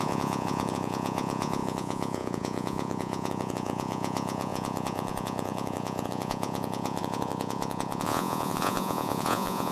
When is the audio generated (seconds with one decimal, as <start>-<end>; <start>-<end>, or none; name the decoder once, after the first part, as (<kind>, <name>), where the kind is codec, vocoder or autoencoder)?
0.0-9.7 (vocoder, Vocos)